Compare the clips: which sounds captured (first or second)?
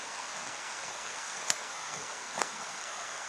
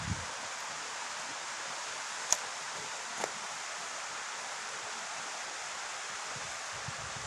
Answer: second